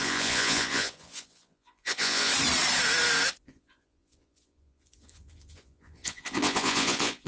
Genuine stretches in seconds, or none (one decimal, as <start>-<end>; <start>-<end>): 2.3-3.4